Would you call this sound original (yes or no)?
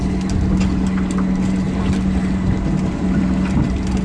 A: yes